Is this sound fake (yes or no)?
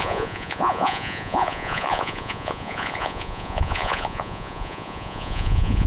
yes